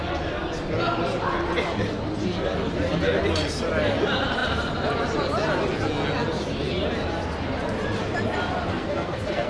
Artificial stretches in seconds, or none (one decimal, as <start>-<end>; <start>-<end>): 8.7-9.5